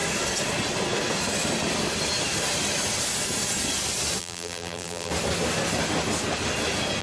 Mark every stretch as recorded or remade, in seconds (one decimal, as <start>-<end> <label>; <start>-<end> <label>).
0.0-4.2 recorded; 4.2-5.1 remade; 5.1-7.0 recorded